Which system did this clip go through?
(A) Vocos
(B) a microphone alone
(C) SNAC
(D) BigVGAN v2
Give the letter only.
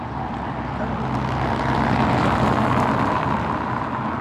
B